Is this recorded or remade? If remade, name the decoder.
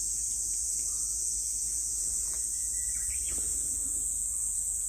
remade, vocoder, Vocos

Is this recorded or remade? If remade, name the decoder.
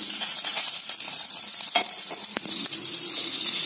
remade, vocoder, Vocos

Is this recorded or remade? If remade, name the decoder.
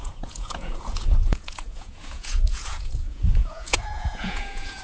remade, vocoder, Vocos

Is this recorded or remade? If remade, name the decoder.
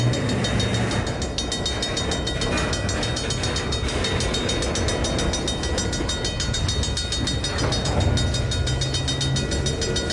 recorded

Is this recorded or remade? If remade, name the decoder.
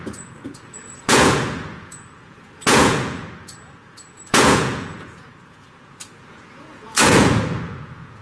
remade, vocoder, Vocos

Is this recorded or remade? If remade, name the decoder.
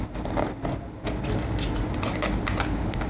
recorded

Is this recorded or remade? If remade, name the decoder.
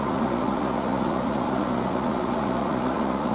remade, vocoder, Vocos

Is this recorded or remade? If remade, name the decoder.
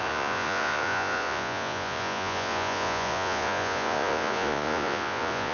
remade, vocoder, Vocos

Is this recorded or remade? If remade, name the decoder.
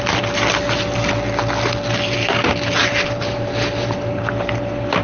recorded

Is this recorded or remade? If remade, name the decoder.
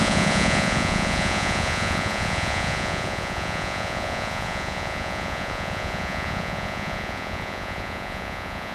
remade, vocoder, Vocos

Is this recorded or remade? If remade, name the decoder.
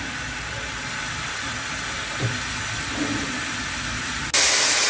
recorded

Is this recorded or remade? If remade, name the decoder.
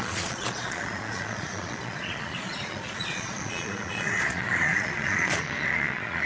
remade, vocoder, Vocos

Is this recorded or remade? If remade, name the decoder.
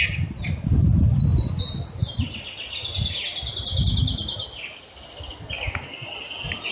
recorded